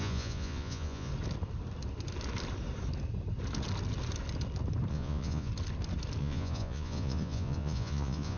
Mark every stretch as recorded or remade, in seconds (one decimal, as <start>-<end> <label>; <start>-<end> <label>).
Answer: 0.0-1.1 remade; 1.1-4.9 recorded; 4.9-5.5 remade; 5.5-6.2 recorded; 6.2-8.4 remade